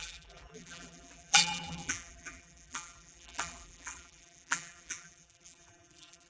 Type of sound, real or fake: fake